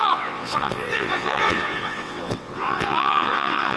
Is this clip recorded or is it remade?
remade